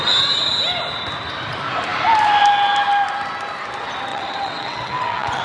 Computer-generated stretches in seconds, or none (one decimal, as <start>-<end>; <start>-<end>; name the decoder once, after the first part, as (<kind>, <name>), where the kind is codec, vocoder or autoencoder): 4.1-5.4 (vocoder, WaveNeXt)